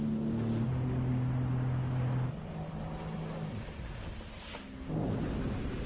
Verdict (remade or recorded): recorded